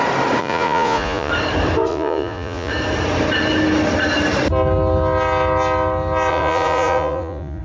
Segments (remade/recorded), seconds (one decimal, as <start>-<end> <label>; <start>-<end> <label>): 0.0-0.4 recorded; 0.4-1.3 remade; 1.3-1.9 recorded; 1.9-2.7 remade; 2.7-6.3 recorded; 6.3-7.6 remade